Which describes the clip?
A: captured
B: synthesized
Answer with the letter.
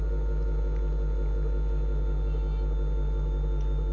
A